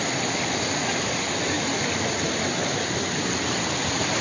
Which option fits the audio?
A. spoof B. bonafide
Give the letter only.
B